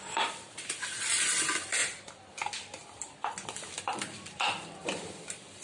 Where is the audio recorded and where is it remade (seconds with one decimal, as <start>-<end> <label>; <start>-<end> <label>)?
0.0-1.8 remade; 1.8-3.5 recorded; 3.5-5.6 remade